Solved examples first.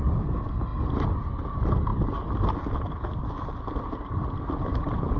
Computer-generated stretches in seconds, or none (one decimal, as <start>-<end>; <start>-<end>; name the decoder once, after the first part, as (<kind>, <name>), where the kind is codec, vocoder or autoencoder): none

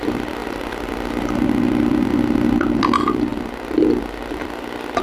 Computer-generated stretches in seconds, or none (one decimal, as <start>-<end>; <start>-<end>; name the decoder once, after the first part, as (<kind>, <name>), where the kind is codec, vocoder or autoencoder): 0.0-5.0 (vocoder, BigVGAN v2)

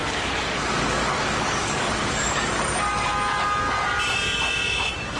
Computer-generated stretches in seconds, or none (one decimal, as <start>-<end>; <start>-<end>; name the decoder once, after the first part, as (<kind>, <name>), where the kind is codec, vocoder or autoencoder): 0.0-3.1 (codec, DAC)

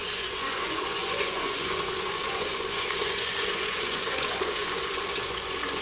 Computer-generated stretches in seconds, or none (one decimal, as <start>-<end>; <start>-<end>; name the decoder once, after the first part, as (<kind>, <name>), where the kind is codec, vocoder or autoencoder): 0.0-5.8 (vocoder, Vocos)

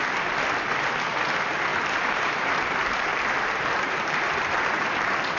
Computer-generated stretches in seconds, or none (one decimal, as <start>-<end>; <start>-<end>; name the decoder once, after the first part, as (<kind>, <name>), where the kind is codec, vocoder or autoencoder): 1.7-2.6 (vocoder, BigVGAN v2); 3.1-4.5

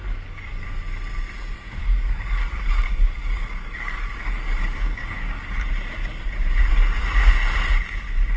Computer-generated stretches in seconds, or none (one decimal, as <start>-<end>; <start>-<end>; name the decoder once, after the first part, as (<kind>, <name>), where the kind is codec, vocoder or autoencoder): 0.0-0.6 (codec, DAC); 1.8-5.4

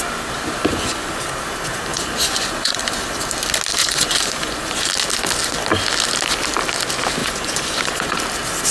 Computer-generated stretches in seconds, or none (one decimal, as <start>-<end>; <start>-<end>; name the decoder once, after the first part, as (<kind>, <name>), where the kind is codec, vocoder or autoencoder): 0.7-1.2 (vocoder, Vocos); 1.9-2.8; 3.8-4.9; 7.2-8.2